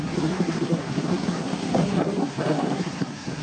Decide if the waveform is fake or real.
fake